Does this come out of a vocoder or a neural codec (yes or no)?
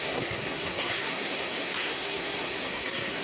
yes